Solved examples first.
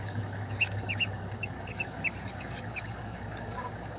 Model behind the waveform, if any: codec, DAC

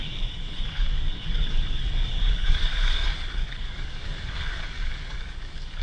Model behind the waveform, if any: codec, DAC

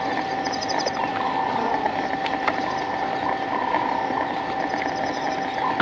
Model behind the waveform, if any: none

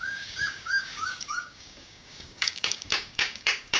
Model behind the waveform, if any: codec, DAC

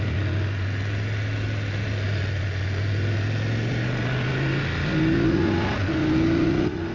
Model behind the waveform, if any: none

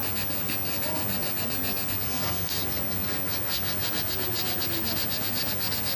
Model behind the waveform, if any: none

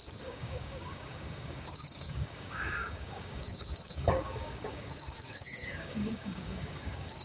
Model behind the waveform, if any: codec, DAC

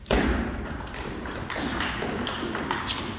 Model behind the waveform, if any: none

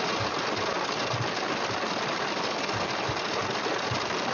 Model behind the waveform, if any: none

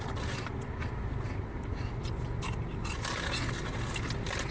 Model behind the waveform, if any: none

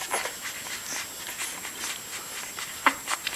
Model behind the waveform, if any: none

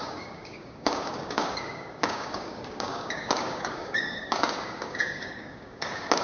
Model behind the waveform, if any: codec, DAC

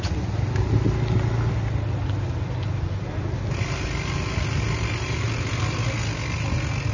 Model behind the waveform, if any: none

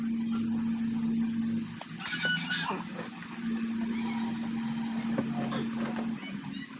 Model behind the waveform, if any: none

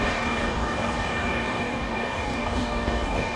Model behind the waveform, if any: codec, DAC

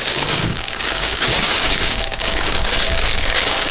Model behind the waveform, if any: codec, DAC